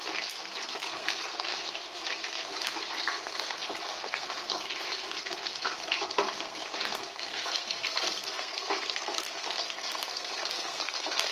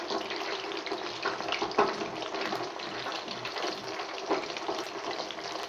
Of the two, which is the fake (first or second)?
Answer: first